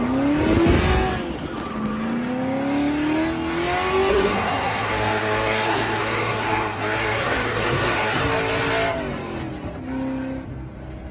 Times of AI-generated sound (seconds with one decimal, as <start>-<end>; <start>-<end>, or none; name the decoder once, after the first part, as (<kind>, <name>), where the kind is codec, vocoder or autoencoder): 4.1-8.2 (codec, SNAC)